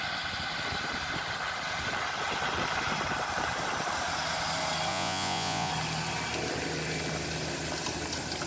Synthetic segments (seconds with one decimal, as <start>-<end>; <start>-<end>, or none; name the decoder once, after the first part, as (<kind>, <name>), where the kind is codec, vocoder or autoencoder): 4.9-5.7 (vocoder, Vocos)